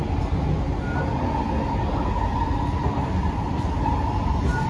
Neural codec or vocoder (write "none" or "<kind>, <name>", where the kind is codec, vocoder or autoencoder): none